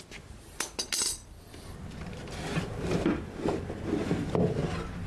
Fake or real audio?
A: real